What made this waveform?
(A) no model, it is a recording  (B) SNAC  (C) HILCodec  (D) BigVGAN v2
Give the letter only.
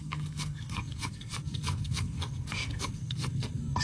B